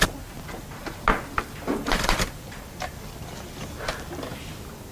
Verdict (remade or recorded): recorded